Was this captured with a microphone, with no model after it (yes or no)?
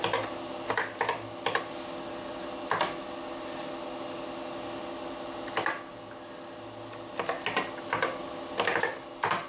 yes